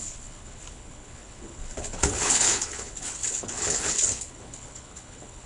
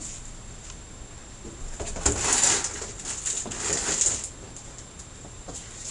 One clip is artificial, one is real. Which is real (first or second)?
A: second